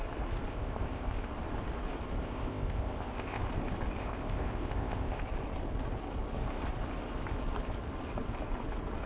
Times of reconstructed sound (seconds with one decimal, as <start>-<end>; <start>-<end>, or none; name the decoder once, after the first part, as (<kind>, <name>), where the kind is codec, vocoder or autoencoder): 0.5-1.3 (codec, ZipCodec); 2.2-3.4; 4.0-5.2